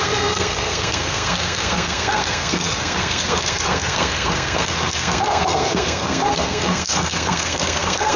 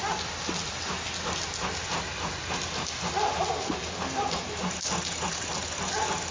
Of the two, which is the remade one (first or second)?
first